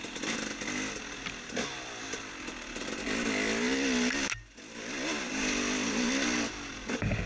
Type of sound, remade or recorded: recorded